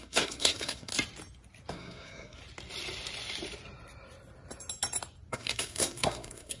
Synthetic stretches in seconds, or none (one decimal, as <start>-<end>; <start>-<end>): 0.0-0.9; 1.7-2.4; 5.3-6.6